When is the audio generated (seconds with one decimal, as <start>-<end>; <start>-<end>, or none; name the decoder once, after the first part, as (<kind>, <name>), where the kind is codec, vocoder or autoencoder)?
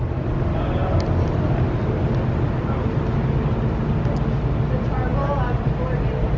none